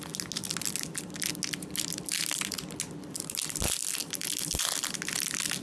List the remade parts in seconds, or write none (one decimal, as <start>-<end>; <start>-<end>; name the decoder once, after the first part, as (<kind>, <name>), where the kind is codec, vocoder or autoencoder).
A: none